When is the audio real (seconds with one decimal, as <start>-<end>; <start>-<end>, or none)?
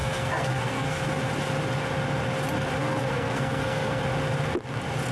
1.2-2.8; 4.0-5.1